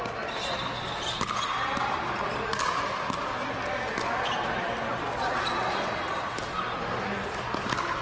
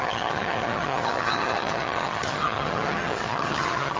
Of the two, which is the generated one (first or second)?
second